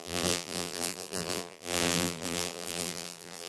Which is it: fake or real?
fake